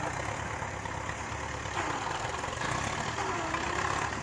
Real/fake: real